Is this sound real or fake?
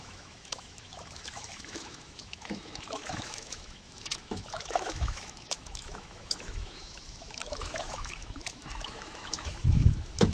fake